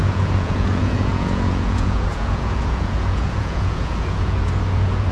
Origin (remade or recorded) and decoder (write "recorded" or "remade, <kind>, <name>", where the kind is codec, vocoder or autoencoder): remade, vocoder, Vocos